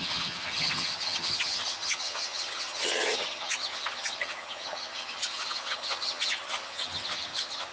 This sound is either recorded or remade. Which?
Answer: remade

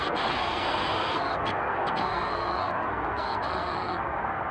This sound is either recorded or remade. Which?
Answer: remade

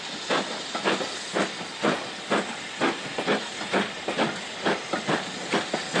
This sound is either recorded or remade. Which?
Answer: recorded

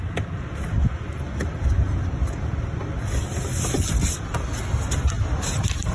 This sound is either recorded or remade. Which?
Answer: recorded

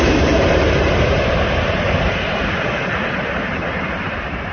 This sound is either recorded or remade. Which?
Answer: remade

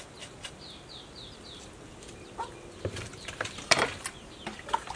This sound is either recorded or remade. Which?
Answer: recorded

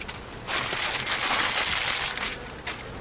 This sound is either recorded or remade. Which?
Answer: recorded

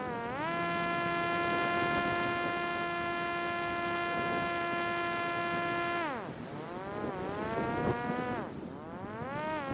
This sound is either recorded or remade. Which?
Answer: recorded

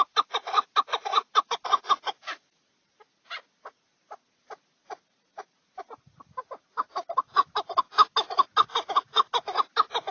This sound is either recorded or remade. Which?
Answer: recorded